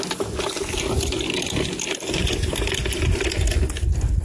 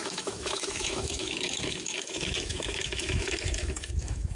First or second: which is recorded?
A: first